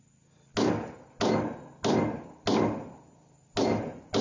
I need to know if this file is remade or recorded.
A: recorded